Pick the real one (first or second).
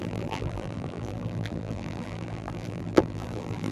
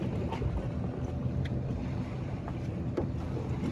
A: second